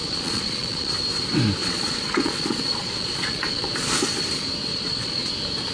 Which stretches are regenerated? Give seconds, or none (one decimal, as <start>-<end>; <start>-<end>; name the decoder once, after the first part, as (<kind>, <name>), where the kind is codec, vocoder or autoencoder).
0.0-0.9 (vocoder, Vocos); 1.6-4.0; 4.7-5.3